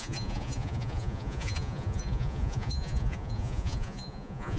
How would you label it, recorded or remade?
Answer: remade